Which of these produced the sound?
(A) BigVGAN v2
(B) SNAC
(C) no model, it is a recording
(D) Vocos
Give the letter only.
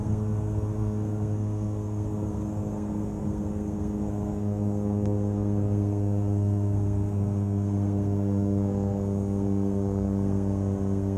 B